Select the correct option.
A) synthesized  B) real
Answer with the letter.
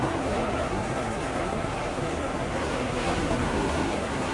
A